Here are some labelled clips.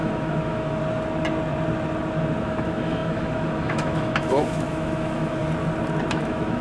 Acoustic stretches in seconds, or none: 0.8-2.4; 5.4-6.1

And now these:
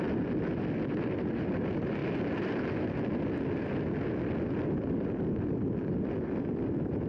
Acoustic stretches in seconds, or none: 0.0-7.1